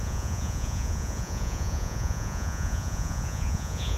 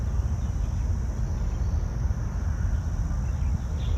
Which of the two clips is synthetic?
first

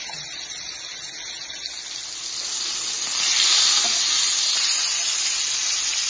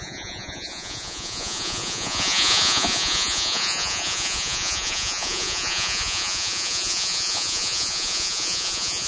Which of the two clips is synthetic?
second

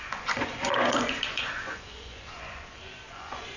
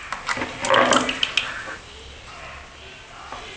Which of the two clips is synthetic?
first